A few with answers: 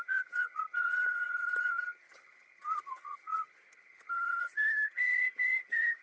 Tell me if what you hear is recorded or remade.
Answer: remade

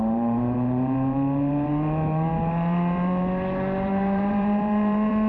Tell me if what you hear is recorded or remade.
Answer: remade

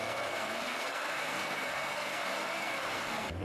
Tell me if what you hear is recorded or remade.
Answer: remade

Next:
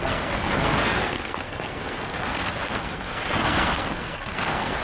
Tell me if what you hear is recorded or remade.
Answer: remade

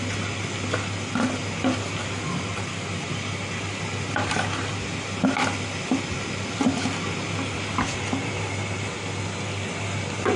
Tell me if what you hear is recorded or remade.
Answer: recorded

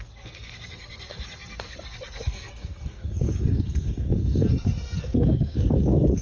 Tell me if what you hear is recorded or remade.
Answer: remade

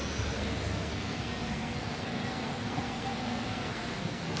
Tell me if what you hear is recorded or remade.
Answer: remade